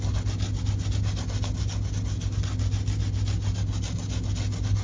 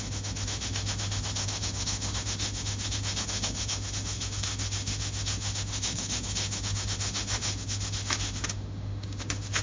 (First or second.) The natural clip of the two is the first